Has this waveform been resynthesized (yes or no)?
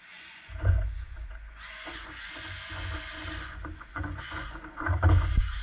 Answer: yes